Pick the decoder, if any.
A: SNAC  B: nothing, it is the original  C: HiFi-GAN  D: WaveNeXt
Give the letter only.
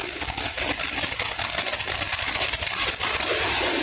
B